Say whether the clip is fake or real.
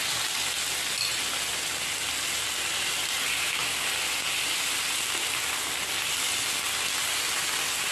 real